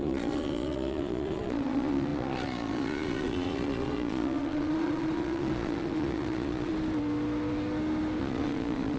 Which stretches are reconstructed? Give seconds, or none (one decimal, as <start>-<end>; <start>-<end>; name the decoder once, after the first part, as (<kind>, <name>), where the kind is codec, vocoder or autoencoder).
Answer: 0.0-6.7 (vocoder, Vocos); 8.2-9.0